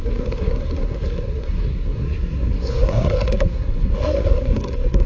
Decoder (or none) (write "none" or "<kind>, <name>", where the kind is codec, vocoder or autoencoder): codec, SNAC